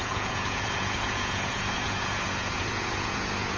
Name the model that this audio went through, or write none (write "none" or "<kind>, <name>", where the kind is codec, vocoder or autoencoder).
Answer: vocoder, Vocos